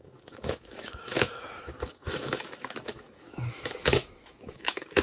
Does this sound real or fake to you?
fake